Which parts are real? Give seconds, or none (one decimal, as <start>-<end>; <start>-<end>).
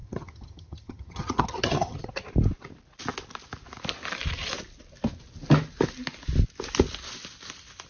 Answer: 2.1-7.9